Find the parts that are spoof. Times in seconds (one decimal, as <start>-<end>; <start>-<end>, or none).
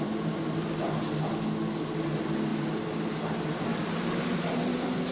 3.7-4.2